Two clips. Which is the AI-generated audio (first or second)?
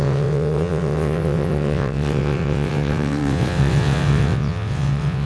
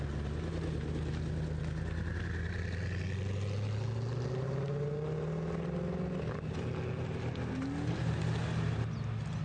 first